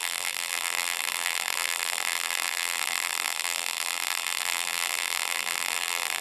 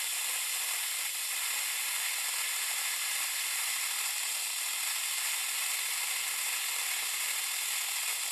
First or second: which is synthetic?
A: first